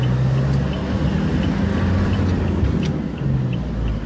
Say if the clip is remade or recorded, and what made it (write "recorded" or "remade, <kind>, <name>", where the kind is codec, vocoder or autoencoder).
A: recorded